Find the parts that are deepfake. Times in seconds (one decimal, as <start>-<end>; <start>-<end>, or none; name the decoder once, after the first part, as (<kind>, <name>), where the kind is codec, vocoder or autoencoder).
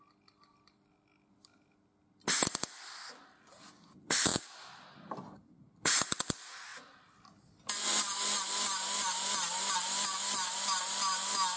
none